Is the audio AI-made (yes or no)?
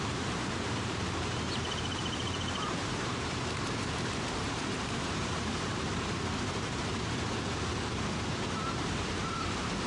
yes